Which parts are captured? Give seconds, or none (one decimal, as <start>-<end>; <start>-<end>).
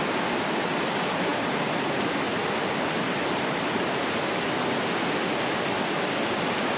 0.0-6.8